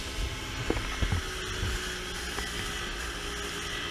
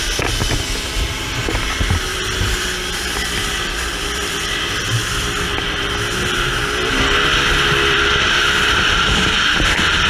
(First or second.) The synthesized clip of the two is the second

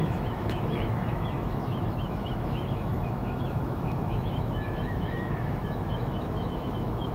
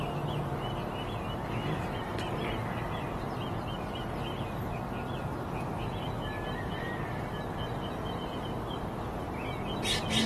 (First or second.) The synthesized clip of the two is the first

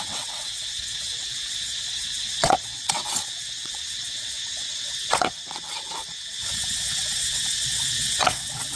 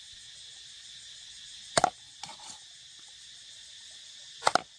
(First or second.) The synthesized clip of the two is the first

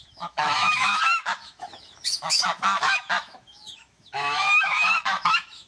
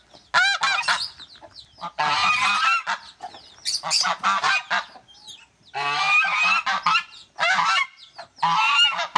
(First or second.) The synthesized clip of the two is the first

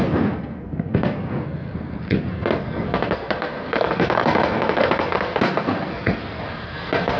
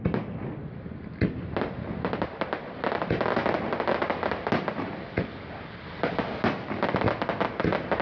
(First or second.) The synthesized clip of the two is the first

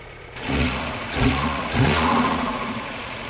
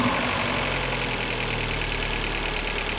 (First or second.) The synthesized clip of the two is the first